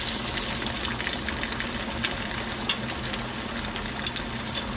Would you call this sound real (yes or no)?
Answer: yes